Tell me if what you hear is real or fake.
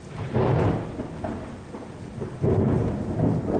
real